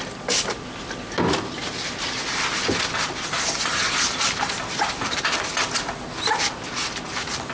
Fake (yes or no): no